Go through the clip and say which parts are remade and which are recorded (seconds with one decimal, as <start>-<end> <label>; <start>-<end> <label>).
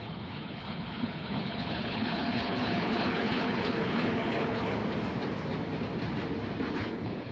0.0-4.8 remade; 4.8-6.7 recorded; 6.7-7.3 remade